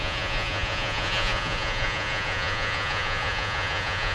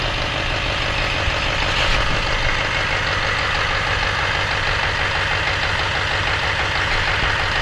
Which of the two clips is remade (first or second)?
first